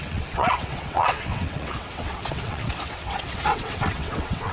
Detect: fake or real fake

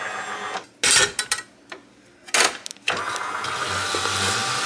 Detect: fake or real real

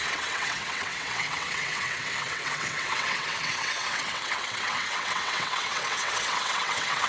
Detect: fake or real fake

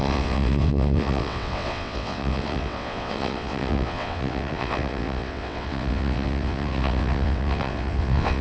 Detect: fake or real fake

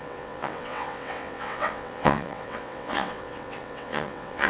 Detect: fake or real fake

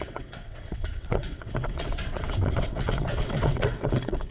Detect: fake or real fake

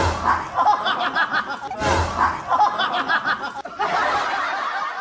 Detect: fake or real real